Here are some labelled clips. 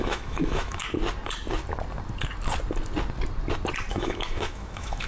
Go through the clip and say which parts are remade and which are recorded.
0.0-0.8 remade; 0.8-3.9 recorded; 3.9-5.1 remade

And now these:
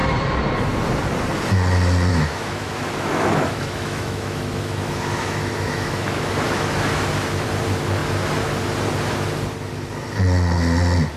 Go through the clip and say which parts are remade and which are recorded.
0.0-2.1 recorded; 2.1-6.8 remade; 6.8-11.2 recorded

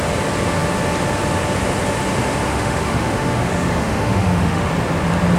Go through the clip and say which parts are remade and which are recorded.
0.0-2.5 recorded; 2.5-4.7 remade; 4.7-5.4 recorded

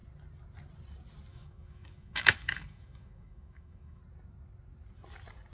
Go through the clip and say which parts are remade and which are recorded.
0.0-1.3 recorded; 1.3-4.0 remade; 4.0-5.5 recorded

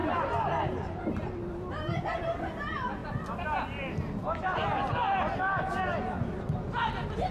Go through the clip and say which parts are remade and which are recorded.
0.0-7.3 recorded

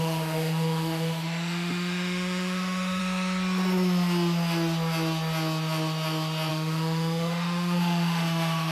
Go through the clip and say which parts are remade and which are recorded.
0.0-3.0 remade; 3.0-6.5 recorded; 6.5-8.7 remade